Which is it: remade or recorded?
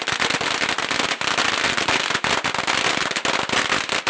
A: recorded